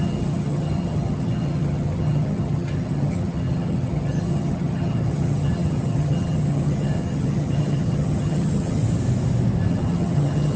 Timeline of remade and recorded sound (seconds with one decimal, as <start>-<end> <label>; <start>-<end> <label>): 0.0-8.8 remade; 8.8-9.7 recorded; 9.7-10.6 remade